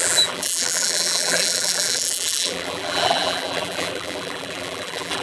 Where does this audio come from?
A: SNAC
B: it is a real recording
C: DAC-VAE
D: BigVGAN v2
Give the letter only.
D